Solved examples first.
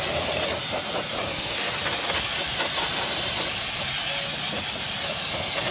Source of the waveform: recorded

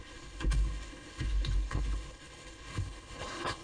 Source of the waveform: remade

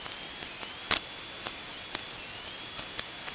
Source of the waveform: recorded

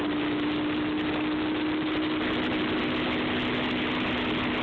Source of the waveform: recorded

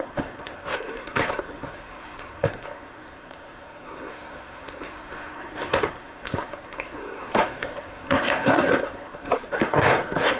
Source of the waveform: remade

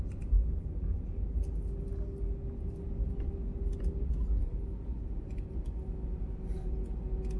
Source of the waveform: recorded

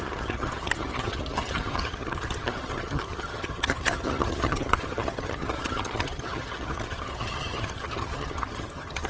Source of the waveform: remade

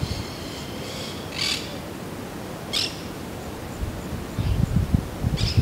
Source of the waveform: recorded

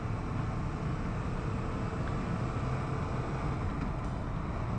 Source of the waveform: recorded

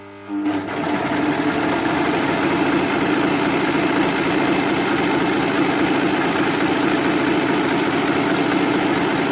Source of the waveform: recorded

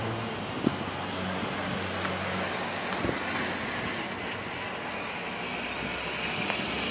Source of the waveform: recorded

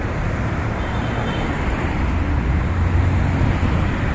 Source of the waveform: recorded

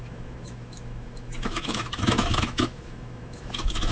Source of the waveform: remade